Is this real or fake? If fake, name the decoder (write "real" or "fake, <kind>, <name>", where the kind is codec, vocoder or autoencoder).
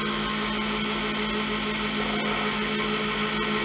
real